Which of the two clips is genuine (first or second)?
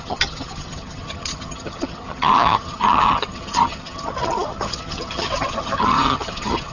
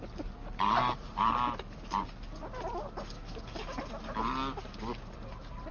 second